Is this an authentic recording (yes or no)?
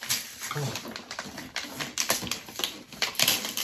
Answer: yes